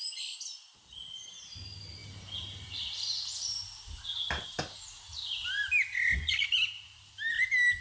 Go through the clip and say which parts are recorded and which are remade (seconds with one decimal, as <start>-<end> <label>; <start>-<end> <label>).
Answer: 0.0-7.8 recorded